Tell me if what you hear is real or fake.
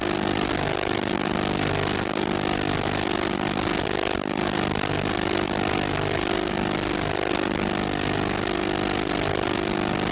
real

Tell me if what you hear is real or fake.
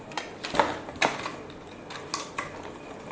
real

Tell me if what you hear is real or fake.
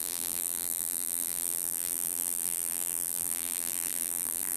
fake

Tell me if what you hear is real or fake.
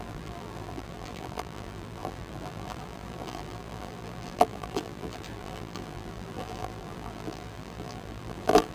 fake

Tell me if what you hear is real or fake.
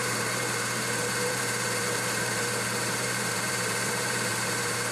fake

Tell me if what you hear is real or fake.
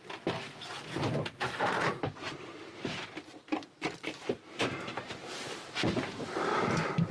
fake